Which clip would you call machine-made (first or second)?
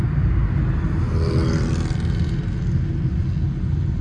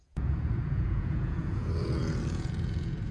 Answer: second